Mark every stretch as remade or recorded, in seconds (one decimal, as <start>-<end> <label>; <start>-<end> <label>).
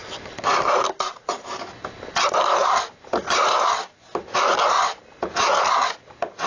0.0-1.4 remade; 1.4-2.6 recorded; 2.6-3.2 remade; 3.2-6.5 recorded